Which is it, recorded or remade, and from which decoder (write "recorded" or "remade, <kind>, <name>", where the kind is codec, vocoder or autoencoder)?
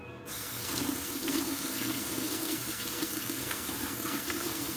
remade, codec, SNAC